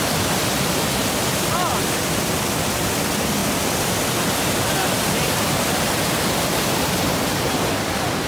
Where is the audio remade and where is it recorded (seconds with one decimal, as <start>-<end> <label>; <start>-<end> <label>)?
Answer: 0.0-8.3 recorded